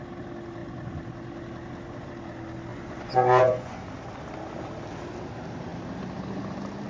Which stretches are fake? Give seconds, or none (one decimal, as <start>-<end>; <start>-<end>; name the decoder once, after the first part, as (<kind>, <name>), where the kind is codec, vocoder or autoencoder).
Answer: 2.7-3.8 (vocoder, Vocos)